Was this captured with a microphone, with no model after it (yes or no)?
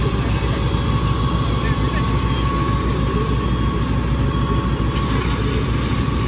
yes